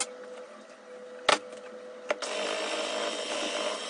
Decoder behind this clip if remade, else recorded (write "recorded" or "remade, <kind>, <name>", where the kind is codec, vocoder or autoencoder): recorded